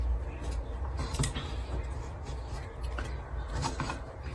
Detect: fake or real fake